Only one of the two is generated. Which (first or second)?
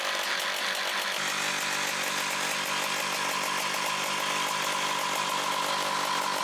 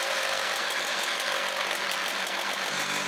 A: second